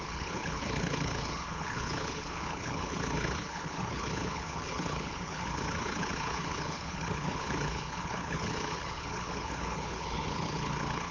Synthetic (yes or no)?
yes